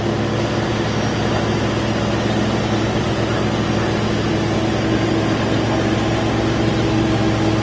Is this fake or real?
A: real